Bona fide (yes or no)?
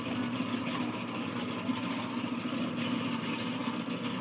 yes